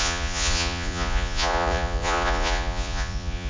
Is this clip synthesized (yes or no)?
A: yes